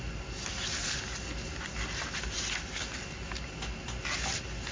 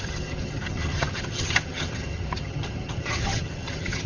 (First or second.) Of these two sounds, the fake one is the second